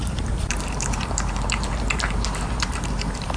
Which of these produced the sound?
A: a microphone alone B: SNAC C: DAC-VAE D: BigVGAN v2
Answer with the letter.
D